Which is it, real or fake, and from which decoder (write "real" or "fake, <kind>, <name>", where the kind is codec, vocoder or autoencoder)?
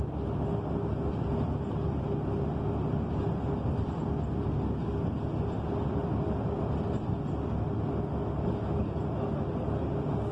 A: real